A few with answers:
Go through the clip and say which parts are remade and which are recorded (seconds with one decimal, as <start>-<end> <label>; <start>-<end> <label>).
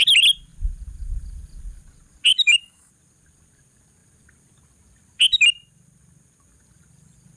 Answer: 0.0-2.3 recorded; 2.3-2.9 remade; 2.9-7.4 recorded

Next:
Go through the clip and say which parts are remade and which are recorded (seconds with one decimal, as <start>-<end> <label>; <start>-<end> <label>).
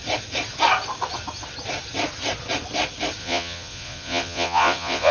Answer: 0.0-3.2 recorded; 3.2-5.1 remade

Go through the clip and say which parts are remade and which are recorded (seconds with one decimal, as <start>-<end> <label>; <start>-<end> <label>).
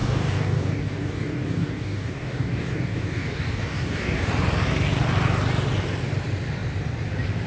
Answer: 0.0-4.3 remade; 4.3-7.5 recorded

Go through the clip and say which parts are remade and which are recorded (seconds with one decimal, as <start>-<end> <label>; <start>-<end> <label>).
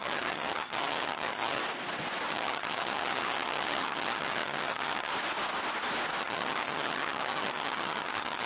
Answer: 0.0-1.6 remade; 1.6-2.3 recorded; 2.3-5.1 remade; 5.1-6.2 recorded; 6.2-8.5 remade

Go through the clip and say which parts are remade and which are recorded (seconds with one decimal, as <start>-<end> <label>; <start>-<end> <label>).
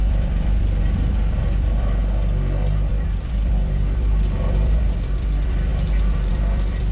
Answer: 0.0-2.0 remade; 2.0-2.9 recorded; 2.9-6.9 remade